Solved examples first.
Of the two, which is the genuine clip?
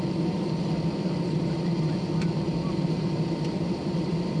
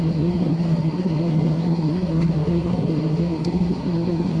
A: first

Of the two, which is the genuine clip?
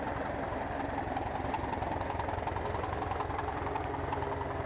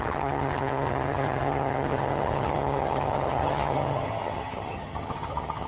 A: first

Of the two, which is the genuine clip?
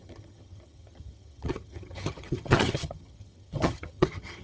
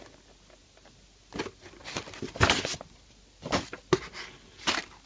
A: second